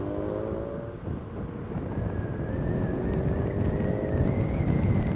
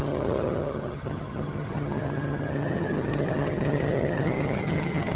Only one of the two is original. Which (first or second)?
first